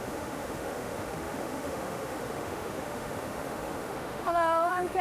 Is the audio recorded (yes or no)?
no